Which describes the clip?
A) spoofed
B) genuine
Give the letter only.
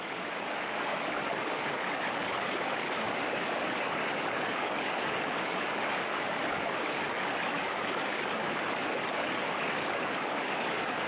A